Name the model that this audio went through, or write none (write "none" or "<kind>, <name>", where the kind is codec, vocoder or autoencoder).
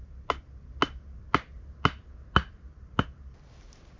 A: none